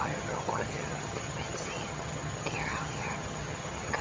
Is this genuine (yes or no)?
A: no